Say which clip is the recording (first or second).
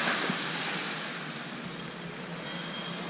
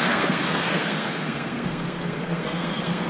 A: first